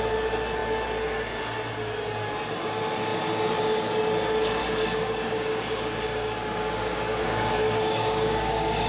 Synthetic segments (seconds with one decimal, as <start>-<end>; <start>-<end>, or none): 4.6-8.9